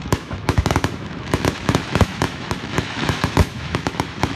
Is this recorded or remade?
remade